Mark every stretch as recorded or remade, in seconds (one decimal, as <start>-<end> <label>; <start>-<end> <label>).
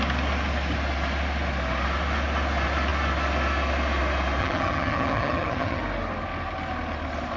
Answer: 0.0-4.4 recorded; 4.4-5.8 remade; 5.8-7.4 recorded